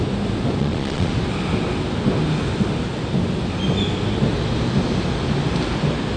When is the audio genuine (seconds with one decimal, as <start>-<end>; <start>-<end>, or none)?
0.0-0.6; 1.1-6.2